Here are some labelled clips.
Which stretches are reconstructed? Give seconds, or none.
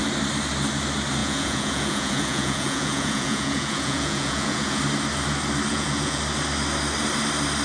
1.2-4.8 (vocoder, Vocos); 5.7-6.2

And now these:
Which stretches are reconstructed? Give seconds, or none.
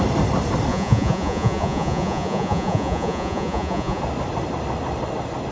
0.7-4.0 (vocoder, Vocos)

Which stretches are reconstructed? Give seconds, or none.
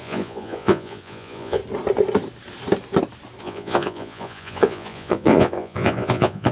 0.0-1.6 (vocoder, Vocos); 3.4-6.5